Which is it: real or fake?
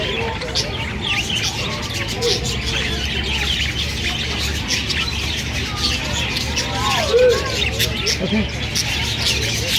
real